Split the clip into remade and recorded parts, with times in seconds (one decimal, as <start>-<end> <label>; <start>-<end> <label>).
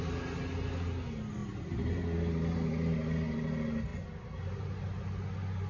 0.0-5.7 recorded